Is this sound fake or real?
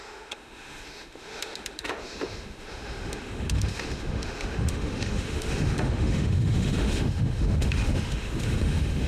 fake